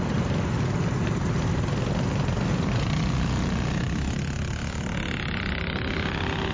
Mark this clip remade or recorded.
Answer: recorded